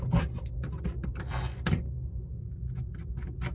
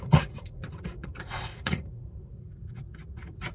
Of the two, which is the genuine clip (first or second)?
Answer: first